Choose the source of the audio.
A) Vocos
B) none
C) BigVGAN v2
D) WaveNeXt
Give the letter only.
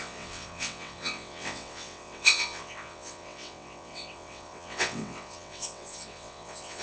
D